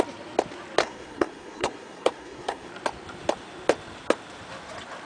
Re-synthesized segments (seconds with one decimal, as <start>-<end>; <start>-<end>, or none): 0.8-2.7